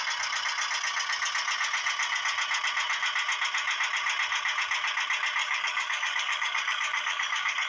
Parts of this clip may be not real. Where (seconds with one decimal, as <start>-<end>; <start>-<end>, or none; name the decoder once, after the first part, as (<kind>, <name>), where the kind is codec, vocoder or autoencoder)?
5.4-7.7 (codec, DAC)

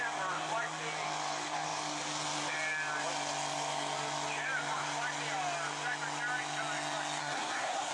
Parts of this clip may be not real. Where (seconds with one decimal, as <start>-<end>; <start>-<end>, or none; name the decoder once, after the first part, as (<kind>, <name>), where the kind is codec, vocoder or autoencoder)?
7.2-7.9 (codec, SNAC)

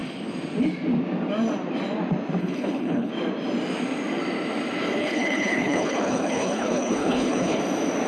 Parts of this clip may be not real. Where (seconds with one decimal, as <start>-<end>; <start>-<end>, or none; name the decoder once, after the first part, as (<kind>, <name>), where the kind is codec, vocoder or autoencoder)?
2.4-3.1 (codec, HILCodec); 5.0-7.6

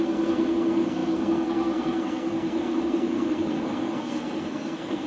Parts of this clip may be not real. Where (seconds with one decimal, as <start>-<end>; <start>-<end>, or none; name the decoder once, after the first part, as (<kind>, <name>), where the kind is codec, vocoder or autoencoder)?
0.0-5.1 (codec, SNAC)